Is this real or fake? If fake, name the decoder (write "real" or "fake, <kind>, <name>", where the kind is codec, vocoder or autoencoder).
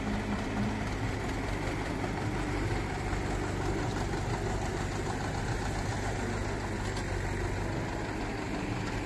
real